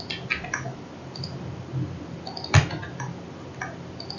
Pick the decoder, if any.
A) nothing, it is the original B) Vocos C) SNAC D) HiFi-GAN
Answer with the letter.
A